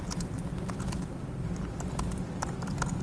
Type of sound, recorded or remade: recorded